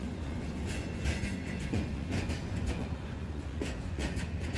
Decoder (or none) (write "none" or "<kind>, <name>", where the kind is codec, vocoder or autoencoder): vocoder, Vocos